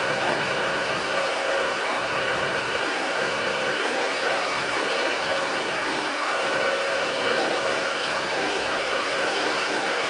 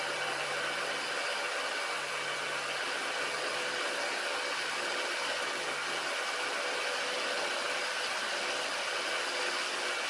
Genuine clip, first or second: second